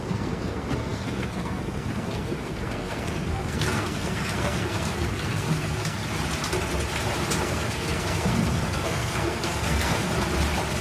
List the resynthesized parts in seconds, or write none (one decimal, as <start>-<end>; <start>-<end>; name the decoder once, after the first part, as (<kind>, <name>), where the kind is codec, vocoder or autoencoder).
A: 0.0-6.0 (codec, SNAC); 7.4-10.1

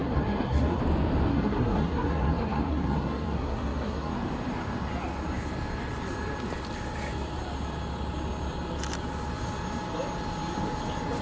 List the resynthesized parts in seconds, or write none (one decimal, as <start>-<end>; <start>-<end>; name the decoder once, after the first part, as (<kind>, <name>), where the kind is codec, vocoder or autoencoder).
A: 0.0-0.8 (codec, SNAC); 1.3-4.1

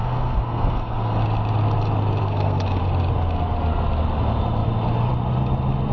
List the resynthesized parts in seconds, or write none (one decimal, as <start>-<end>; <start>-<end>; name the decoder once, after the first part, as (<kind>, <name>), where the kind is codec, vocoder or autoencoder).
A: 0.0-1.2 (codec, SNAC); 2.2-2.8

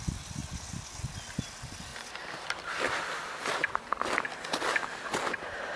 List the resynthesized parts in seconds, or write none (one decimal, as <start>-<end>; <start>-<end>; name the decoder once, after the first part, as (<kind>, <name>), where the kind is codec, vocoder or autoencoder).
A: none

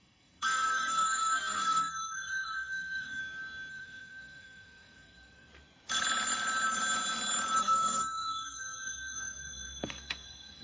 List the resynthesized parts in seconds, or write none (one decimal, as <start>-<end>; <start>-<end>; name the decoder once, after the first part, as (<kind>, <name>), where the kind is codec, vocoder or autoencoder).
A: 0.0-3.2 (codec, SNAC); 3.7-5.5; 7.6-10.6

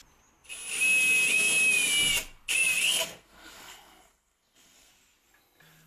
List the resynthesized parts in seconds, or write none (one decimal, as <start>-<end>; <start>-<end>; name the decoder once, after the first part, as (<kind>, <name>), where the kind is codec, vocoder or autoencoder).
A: 2.8-4.9 (codec, SNAC)

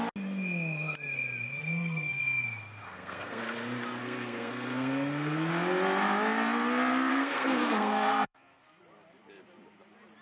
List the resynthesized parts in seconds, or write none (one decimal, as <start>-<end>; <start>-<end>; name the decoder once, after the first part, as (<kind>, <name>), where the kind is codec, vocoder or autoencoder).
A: 1.6-2.2 (codec, SNAC); 2.8-3.4; 4.0-5.5; 7.1-8.8

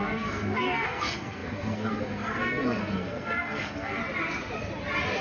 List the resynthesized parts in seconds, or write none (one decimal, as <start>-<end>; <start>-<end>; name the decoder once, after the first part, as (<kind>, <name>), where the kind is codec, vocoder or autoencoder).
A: 0.0-4.0 (codec, SNAC)